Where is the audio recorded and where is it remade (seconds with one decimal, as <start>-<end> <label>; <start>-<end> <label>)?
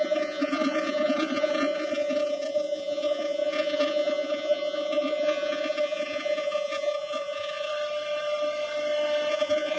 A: 0.0-7.7 remade; 7.7-9.3 recorded; 9.3-9.8 remade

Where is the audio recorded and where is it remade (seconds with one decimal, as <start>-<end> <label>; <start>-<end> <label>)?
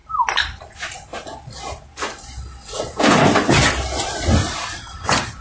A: 0.0-5.4 recorded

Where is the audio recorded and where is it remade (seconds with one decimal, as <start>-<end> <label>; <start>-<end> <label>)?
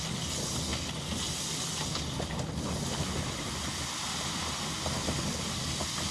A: 0.0-6.1 recorded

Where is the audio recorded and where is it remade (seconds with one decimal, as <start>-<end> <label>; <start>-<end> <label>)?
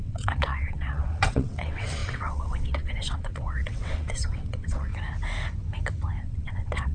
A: 0.0-4.9 remade; 4.9-6.2 recorded; 6.2-6.9 remade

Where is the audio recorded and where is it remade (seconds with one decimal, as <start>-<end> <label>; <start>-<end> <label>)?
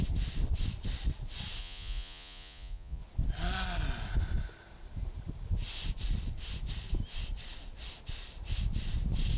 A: 0.0-1.6 recorded; 1.6-3.0 remade; 3.0-9.4 recorded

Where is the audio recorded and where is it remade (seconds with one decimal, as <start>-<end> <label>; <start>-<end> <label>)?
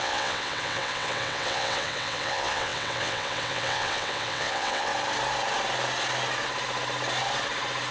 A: 0.0-4.9 remade; 4.9-7.9 recorded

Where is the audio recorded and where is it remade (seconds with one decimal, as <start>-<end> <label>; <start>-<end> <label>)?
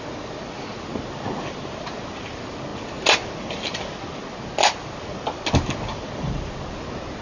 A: 0.0-5.9 recorded; 5.9-6.5 remade; 6.5-7.2 recorded